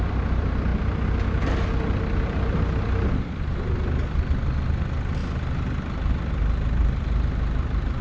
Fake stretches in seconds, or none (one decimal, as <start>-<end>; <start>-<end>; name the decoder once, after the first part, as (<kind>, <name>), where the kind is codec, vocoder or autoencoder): 0.0-0.7 (vocoder, BigVGAN v2); 1.8-5.2; 6.1-8.0